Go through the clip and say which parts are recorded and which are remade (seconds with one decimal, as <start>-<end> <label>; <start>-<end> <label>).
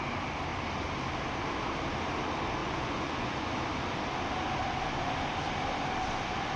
0.0-2.6 recorded; 2.6-3.5 remade; 3.5-6.6 recorded